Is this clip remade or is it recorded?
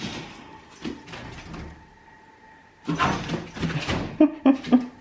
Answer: recorded